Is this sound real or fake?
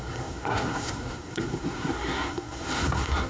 fake